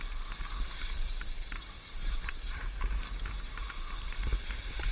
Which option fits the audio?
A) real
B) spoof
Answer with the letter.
B